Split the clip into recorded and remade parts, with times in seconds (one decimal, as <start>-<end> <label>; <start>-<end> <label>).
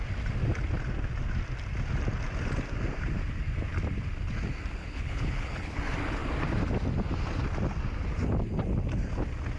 0.0-4.8 recorded; 4.8-5.8 remade; 5.8-9.6 recorded